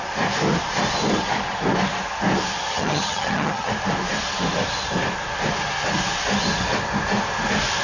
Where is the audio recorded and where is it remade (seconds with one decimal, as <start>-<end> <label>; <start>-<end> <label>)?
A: 0.0-2.7 recorded; 2.7-3.7 remade; 3.7-7.8 recorded